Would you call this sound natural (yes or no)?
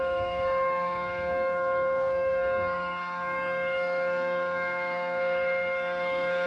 no